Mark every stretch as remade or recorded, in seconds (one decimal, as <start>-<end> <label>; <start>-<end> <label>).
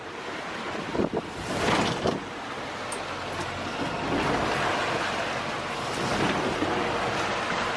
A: 0.0-0.9 remade; 0.9-5.6 recorded; 5.6-7.8 remade